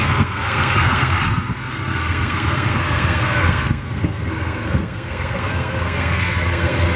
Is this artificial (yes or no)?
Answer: yes